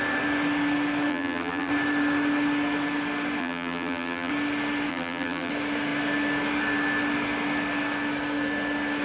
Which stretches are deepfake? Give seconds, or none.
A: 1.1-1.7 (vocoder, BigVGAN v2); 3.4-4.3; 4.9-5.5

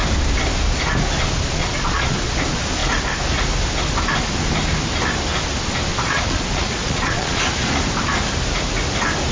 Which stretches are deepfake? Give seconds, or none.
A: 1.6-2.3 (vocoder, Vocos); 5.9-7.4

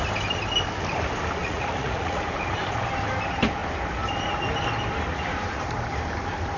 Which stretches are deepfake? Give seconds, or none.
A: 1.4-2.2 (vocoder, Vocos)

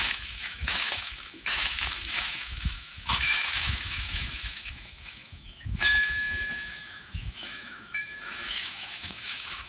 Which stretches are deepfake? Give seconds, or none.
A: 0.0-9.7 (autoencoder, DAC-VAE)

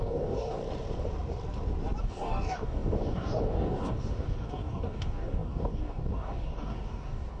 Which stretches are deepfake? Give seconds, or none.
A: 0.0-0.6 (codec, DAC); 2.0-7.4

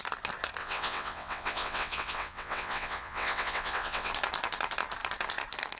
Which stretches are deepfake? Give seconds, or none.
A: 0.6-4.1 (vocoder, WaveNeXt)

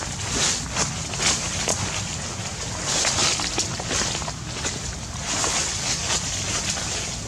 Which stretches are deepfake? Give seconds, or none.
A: none